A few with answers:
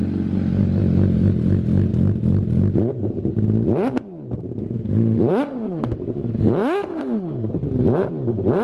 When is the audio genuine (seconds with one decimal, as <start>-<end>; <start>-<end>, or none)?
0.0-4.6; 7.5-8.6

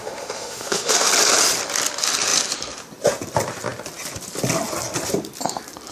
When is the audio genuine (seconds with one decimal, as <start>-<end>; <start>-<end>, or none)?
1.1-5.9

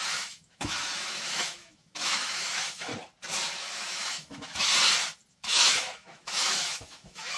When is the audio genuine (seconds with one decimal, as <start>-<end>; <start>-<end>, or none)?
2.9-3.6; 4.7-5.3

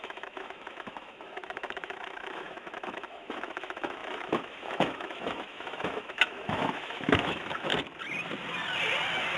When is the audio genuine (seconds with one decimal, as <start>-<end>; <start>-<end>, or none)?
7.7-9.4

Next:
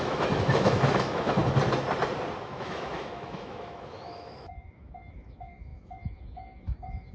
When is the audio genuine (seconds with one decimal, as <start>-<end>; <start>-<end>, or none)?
1.4-2.4

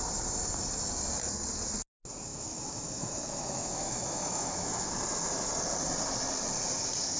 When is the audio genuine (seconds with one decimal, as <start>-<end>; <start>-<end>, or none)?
0.0-2.3; 4.9-7.2

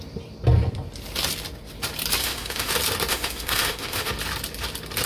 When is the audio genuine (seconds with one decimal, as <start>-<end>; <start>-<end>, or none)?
0.0-2.2; 2.7-3.1; 4.1-5.1

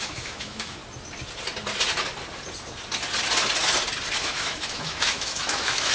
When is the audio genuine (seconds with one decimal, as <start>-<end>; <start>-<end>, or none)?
0.8-4.2